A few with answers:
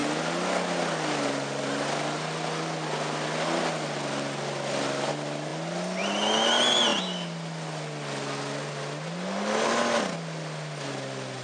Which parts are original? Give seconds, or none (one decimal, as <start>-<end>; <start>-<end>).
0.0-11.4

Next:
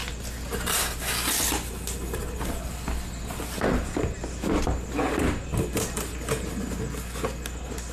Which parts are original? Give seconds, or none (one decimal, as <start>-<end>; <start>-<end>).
0.0-7.9

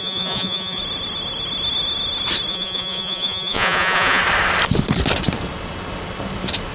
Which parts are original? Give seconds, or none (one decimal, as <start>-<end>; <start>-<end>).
0.8-2.5; 4.2-6.7

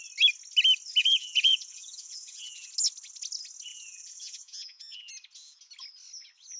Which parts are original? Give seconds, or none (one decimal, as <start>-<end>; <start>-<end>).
0.0-1.0; 2.7-3.7; 5.1-6.6

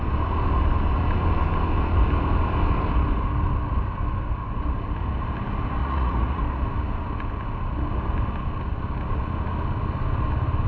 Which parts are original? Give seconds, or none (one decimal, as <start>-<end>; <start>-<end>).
0.0-5.8; 6.4-10.7

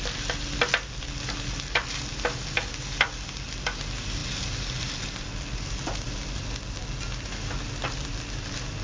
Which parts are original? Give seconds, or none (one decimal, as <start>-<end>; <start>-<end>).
0.0-8.8